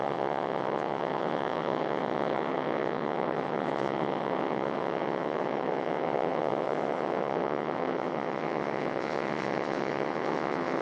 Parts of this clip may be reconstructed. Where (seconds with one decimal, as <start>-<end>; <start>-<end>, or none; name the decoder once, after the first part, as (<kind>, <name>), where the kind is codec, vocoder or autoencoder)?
0.0-10.8 (vocoder, WaveNeXt)